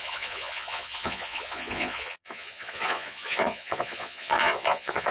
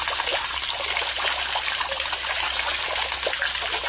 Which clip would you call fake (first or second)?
first